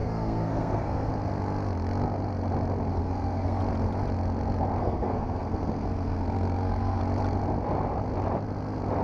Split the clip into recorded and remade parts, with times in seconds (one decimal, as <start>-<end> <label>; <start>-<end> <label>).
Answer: 0.0-1.1 remade; 1.1-2.9 recorded; 2.9-3.6 remade; 3.6-4.8 recorded; 4.8-7.0 remade; 7.0-9.0 recorded